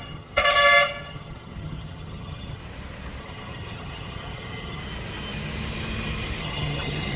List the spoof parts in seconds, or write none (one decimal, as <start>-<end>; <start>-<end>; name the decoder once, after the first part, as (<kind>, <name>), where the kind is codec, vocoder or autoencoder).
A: 0.0-0.4 (vocoder, HiFi-GAN); 1.0-2.6; 3.2-4.8; 6.4-7.2